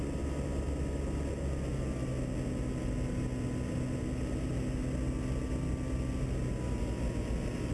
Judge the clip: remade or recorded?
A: recorded